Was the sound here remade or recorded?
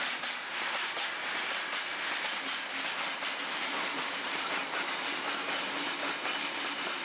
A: recorded